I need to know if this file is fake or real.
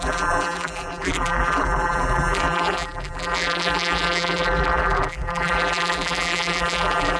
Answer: fake